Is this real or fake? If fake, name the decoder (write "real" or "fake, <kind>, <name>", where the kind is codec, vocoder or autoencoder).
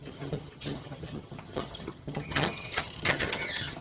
fake, vocoder, HiFi-GAN